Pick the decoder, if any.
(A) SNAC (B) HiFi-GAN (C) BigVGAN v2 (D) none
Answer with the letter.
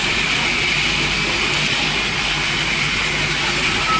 D